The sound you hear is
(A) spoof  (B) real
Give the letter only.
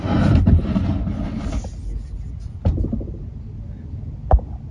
B